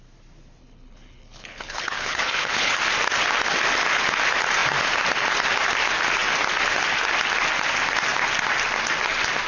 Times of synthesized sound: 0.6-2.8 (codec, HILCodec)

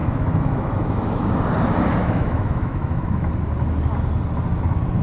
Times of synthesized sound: 0.0-1.3 (autoencoder, DAC-VAE); 2.0-3.3